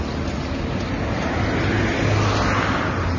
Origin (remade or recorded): recorded